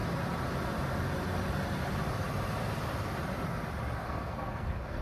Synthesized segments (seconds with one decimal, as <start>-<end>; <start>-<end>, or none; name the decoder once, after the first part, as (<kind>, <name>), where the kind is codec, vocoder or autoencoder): 4.0-5.0 (codec, SNAC)